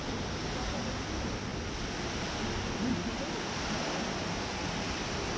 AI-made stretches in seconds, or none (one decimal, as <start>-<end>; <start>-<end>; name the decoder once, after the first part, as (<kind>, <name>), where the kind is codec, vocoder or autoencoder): none